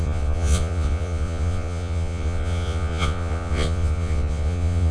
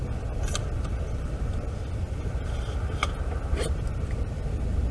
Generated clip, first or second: first